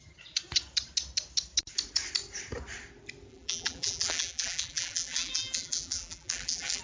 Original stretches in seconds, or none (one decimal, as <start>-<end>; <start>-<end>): 0.0-3.3